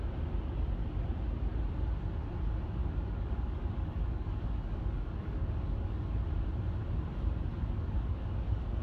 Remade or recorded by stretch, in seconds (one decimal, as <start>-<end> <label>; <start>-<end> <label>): 0.0-2.8 recorded; 2.8-6.1 remade; 6.1-7.5 recorded; 7.5-8.8 remade